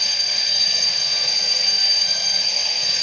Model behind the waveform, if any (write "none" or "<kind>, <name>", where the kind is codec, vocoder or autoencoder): codec, SNAC